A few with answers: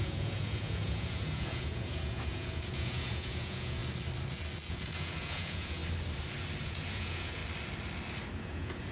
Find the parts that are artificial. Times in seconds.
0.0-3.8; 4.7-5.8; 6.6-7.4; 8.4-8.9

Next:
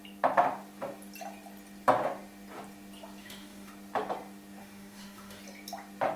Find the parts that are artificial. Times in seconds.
3.2-3.7; 4.6-5.4

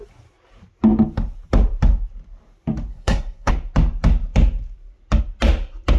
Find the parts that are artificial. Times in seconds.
2.9-3.5

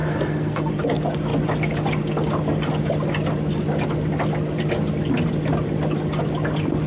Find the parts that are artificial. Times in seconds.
0.0-0.7

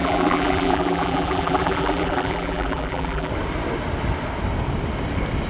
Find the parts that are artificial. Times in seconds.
0.0-3.3

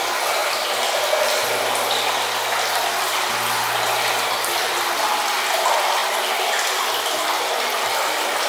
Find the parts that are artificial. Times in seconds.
none